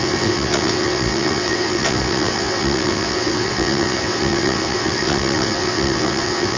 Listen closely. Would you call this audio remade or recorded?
remade